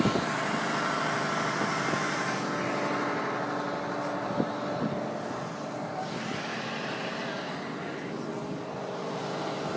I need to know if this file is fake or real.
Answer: real